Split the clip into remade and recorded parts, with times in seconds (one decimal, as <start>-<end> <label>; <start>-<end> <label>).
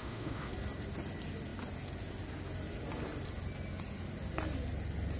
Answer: 0.0-0.5 remade; 0.5-5.2 recorded